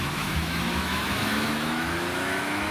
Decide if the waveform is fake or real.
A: fake